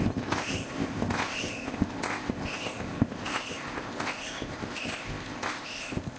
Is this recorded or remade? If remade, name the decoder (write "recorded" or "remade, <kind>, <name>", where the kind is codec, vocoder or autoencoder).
remade, codec, ZipCodec